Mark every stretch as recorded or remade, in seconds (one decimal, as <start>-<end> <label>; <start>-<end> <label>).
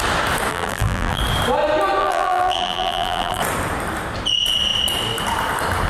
0.0-0.5 recorded; 0.5-1.2 remade; 1.2-2.0 recorded; 2.0-3.4 remade; 3.4-5.9 recorded